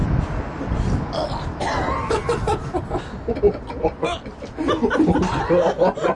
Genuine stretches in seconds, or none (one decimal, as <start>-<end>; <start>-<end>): 0.0-6.2